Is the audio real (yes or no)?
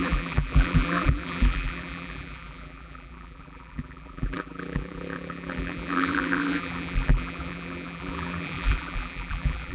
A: no